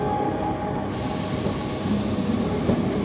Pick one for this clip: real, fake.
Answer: real